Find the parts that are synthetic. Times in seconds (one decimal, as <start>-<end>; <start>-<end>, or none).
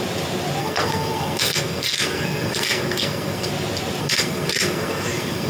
0.6-3.5; 4.0-5.5